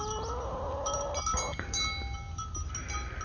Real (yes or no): yes